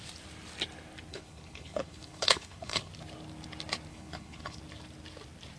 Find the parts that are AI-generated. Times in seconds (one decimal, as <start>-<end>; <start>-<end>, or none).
1.1-2.9; 3.9-4.6